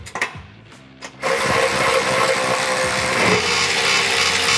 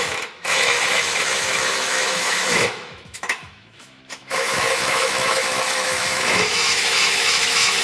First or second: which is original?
first